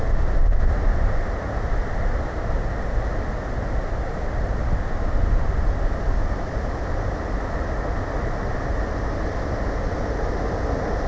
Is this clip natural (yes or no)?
yes